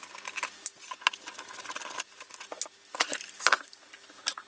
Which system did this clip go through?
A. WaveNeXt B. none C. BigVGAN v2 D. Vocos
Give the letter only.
B